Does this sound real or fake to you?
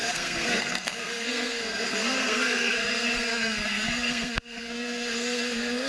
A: fake